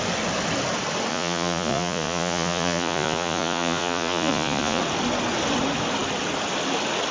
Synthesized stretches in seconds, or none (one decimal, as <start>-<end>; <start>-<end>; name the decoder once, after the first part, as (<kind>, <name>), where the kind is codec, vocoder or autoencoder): 1.1-4.8 (vocoder, Vocos)